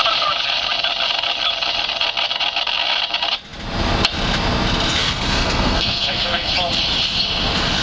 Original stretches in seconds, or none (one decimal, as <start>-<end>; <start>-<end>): 0.0-5.0; 6.5-7.8